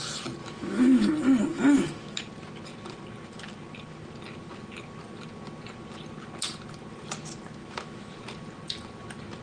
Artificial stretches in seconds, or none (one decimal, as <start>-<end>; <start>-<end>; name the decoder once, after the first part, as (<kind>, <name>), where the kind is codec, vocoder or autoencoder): 0.4-1.1 (autoencoder, DAC-VAE); 1.5-2.2; 7.6-8.1